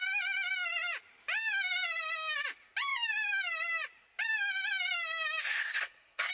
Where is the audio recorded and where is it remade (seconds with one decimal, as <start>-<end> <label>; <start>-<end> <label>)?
0.0-5.4 recorded; 5.4-6.3 remade